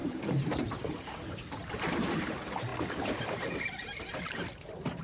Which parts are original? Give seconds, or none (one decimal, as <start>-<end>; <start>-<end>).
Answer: none